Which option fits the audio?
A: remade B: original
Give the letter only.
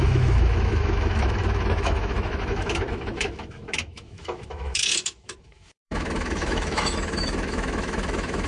A